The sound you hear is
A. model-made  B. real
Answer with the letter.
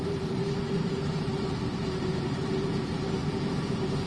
A